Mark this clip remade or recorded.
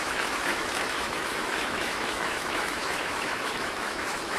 remade